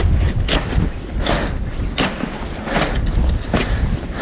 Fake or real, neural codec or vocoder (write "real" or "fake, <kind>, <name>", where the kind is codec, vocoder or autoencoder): real